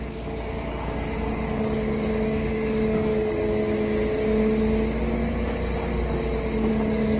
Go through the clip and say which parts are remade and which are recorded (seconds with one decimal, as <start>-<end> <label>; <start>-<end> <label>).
0.0-3.6 remade; 3.6-6.7 recorded; 6.7-7.2 remade